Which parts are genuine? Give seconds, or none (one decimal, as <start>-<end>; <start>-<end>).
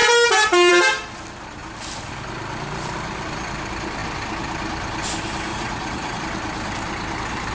0.0-5.5; 6.2-7.5